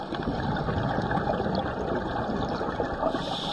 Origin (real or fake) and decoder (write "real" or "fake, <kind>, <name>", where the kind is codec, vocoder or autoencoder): real